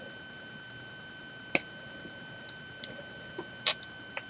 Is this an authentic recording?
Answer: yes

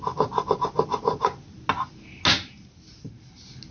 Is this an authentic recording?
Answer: yes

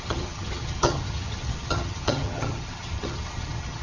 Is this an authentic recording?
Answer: no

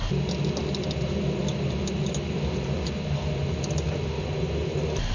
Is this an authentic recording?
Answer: yes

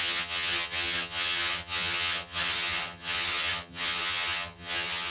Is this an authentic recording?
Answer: no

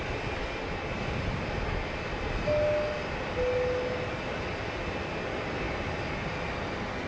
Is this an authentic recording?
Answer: yes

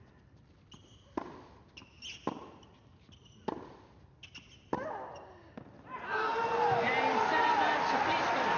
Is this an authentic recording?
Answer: yes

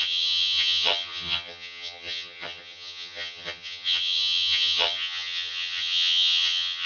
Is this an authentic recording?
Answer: no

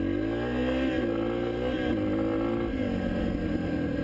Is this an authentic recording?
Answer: yes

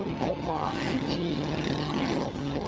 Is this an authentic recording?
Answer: no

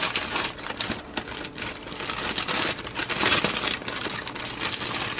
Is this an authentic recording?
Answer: yes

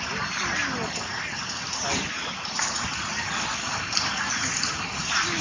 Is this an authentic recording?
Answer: yes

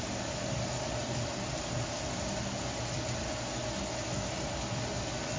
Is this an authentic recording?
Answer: yes